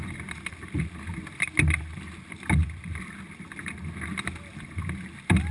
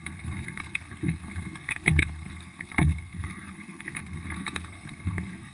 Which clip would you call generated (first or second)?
second